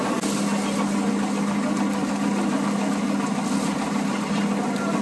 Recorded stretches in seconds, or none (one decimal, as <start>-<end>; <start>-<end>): 0.0-5.0